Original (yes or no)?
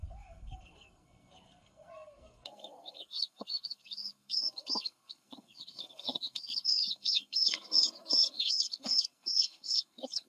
no